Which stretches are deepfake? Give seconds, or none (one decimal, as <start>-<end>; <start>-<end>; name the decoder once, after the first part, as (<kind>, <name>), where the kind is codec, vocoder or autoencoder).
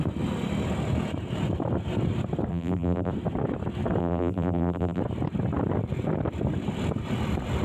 2.5-3.1 (vocoder, BigVGAN v2); 4.0-5.0